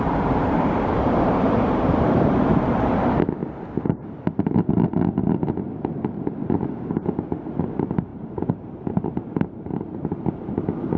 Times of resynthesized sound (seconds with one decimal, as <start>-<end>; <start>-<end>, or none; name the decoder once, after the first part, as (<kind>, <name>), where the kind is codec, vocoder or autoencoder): 0.4-2.6 (vocoder, BigVGAN v2); 8.1-10.5